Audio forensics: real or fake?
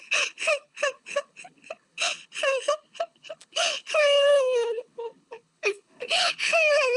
fake